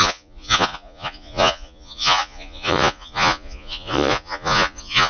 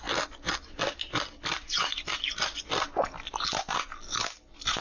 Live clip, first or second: second